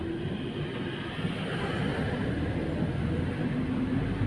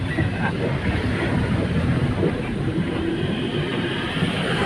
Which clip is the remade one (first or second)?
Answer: second